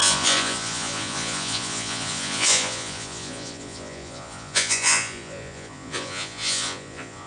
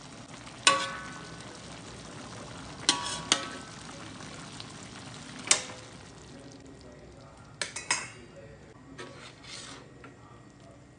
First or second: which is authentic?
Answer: second